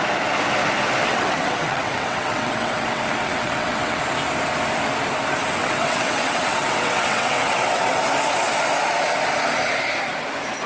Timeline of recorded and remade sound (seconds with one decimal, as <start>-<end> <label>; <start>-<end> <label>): 0.0-1.0 recorded; 1.0-4.0 remade; 4.0-5.6 recorded; 5.6-8.0 remade; 8.0-10.7 recorded